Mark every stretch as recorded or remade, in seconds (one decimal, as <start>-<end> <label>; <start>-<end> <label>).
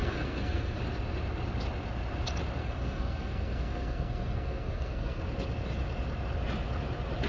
0.0-0.8 remade; 0.8-2.6 recorded; 2.6-5.2 remade; 5.2-7.3 recorded